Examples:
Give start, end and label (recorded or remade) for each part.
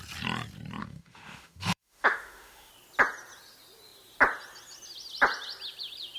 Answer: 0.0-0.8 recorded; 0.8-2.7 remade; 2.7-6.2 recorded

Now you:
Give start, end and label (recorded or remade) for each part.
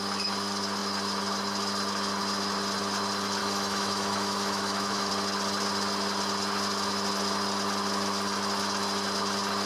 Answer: 0.0-3.4 recorded; 3.4-5.1 remade; 5.1-9.7 recorded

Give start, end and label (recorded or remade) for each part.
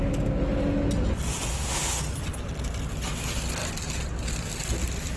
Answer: 0.0-1.5 recorded; 1.5-2.0 remade; 2.0-5.2 recorded